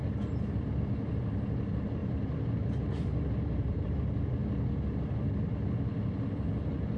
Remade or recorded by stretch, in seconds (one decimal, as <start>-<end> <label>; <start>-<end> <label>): 0.0-2.0 recorded; 2.0-3.9 remade; 3.9-7.0 recorded